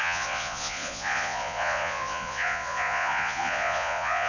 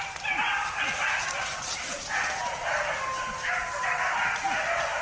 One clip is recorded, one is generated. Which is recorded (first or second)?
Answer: second